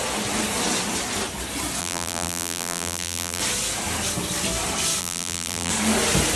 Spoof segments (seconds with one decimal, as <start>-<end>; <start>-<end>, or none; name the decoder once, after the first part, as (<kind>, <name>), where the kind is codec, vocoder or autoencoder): 1.8-3.4 (vocoder, BigVGAN v2); 5.0-5.7